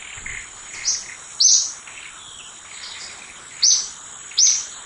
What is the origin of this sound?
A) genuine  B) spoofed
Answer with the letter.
A